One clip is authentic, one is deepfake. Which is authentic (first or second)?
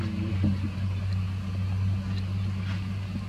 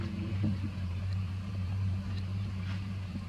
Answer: first